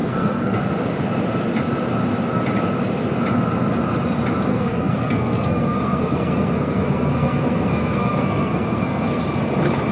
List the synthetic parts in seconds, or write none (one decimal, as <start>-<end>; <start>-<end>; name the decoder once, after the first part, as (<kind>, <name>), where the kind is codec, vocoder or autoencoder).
0.0-0.6 (codec, SNAC); 4.5-9.2